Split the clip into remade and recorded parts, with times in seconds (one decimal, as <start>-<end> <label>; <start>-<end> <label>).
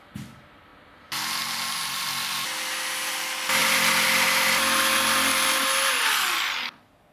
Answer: 0.0-7.1 recorded